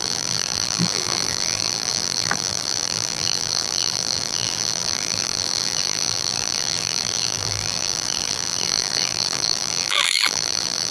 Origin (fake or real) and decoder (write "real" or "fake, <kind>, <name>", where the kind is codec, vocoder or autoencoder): fake, vocoder, BigVGAN v2